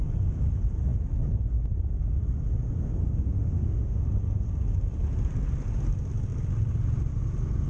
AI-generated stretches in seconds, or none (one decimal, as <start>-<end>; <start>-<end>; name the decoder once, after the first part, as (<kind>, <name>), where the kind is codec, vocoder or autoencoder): 3.0-4.0 (autoencoder, DAC-VAE)